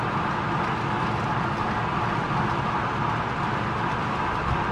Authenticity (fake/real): real